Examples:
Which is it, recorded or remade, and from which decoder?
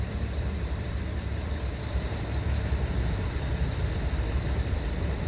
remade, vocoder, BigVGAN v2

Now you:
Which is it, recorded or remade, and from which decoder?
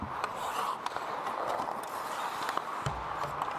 recorded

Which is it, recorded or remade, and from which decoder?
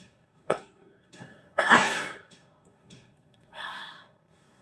remade, codec, SNAC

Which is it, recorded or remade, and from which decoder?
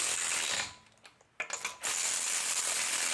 recorded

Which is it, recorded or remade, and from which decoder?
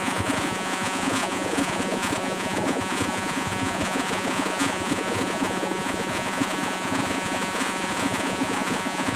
remade, vocoder, Vocos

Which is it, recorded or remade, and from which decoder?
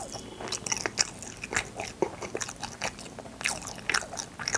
recorded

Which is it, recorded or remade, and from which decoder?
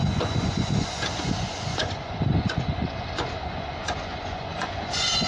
remade, vocoder, Vocos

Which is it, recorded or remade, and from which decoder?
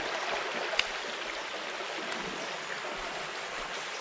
recorded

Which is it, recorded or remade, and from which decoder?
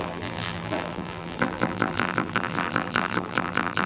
remade, vocoder, BigVGAN v2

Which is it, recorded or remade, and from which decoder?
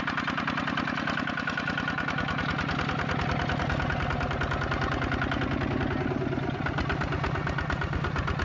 recorded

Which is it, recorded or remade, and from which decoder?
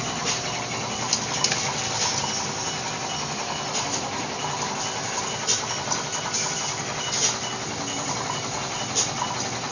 recorded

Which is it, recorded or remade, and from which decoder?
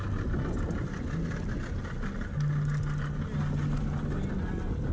recorded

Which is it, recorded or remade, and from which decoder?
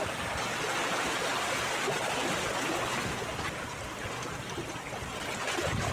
recorded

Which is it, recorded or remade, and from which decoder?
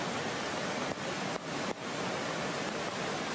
remade, vocoder, BigVGAN v2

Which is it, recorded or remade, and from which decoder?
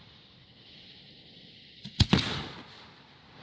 recorded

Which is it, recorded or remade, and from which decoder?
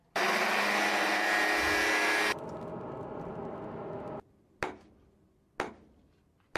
recorded